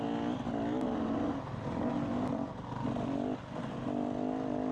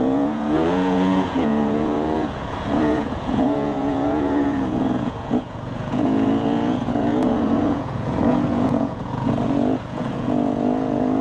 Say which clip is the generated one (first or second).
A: second